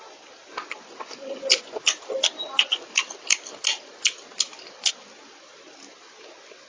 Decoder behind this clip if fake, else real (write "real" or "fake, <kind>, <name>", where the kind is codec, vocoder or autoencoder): real